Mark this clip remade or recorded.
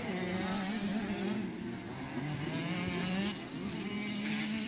recorded